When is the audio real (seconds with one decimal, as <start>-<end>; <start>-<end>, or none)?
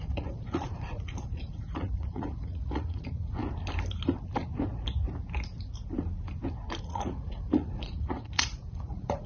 3.4-6.8